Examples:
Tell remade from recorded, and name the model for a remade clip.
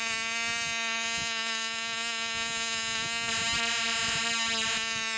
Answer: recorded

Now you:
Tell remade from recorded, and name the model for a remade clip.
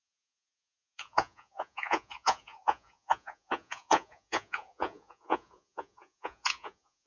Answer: remade, vocoder, Vocos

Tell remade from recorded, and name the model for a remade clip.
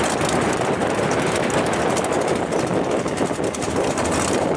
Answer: recorded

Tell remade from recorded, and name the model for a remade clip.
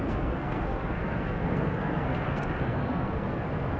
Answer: remade, codec, SNAC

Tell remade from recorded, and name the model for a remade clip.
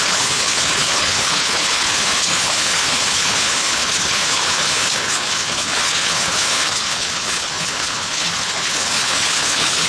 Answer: remade, codec, HILCodec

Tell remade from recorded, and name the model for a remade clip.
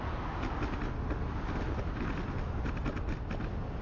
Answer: recorded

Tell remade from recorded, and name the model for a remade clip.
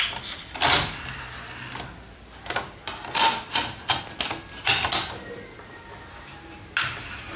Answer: recorded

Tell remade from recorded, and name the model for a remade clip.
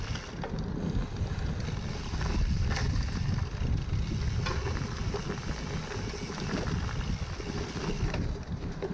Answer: recorded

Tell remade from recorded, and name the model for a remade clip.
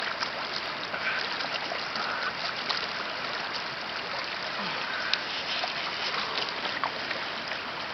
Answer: recorded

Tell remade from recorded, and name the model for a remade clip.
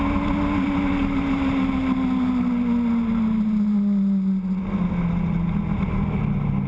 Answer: recorded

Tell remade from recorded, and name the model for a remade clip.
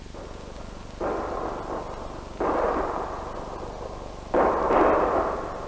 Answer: recorded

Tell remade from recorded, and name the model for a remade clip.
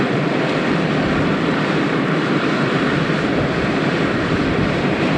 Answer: remade, vocoder, BigVGAN v2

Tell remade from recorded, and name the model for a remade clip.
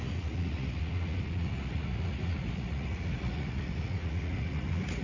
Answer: remade, vocoder, Vocos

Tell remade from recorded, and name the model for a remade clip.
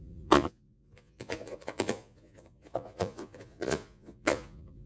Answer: remade, vocoder, Vocos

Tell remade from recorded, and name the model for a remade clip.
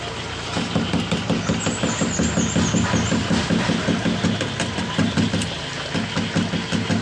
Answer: recorded